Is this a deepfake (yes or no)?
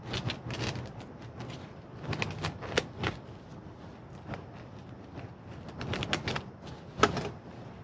no